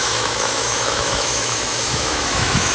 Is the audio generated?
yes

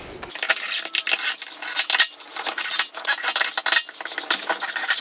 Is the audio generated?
no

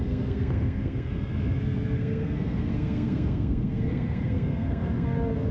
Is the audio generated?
yes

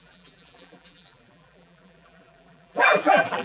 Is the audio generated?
yes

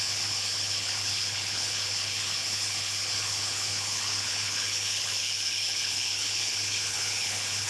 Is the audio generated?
yes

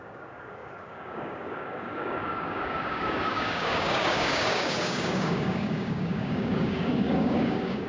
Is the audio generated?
yes